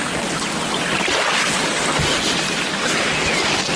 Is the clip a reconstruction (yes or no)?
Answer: no